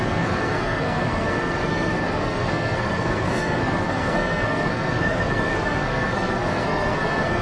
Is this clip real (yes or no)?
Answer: no